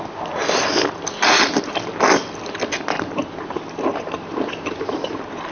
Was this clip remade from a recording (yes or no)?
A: no